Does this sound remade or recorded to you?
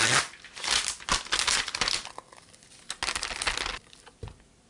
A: recorded